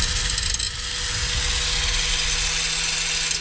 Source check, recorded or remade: recorded